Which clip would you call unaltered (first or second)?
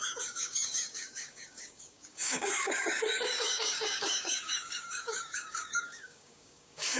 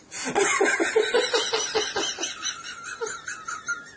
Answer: second